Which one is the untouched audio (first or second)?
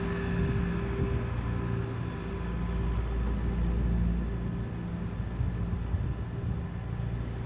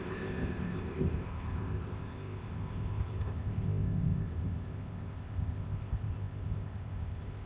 first